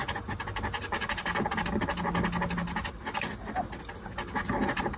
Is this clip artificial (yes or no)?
no